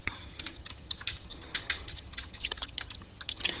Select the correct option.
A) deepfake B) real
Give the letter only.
A